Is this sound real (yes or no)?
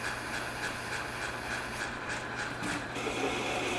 no